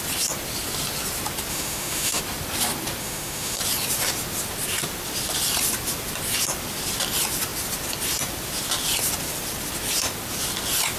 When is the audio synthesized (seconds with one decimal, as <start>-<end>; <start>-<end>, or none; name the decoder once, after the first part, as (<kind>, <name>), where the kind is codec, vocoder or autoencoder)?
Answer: 1.5-2.2 (autoencoder, DAC-VAE); 3.0-3.6